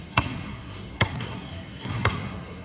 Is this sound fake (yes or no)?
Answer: yes